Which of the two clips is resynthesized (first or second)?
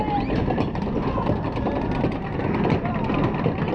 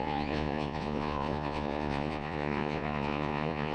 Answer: second